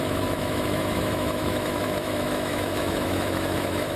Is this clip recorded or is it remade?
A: remade